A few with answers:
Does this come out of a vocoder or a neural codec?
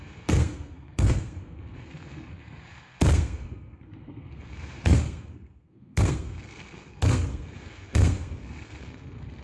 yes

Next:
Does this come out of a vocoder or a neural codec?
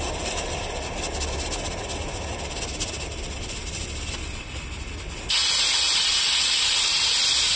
no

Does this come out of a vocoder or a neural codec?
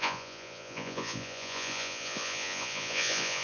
yes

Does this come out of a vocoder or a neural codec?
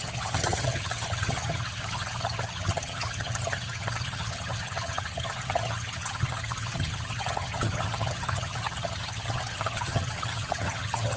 yes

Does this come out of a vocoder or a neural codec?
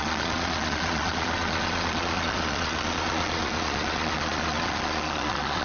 yes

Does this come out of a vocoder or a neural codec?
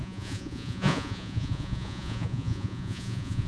yes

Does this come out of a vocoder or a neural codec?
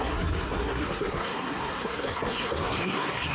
yes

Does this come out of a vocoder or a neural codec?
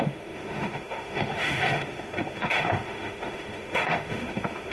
yes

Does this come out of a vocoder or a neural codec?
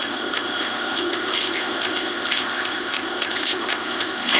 yes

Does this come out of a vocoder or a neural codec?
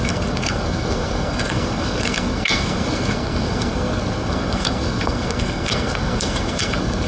yes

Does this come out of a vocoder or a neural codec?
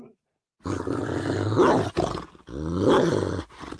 no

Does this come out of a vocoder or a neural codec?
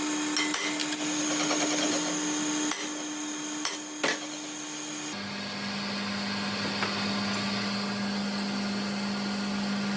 no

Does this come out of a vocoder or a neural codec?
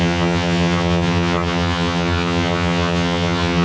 yes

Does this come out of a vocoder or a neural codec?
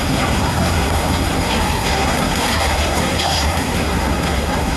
yes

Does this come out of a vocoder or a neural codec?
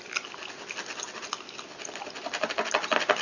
no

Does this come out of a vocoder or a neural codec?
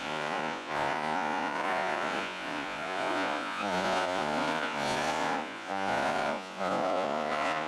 yes